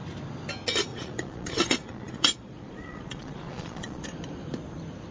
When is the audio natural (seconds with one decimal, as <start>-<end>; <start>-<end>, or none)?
0.0-0.9; 4.0-5.1